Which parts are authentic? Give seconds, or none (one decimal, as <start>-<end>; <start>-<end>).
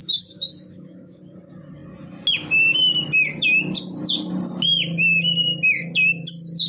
1.2-6.7